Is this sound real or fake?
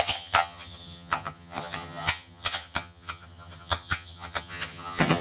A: fake